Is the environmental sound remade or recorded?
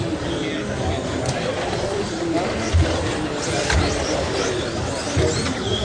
recorded